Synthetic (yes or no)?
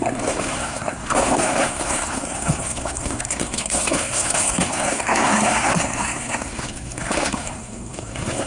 yes